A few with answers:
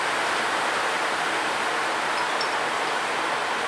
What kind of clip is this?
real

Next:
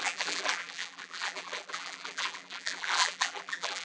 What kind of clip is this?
fake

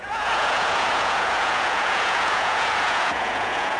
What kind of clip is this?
fake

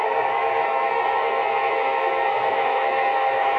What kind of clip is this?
fake